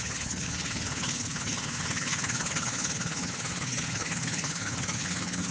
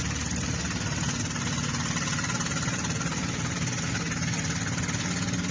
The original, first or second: second